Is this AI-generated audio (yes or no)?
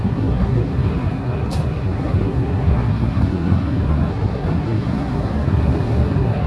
yes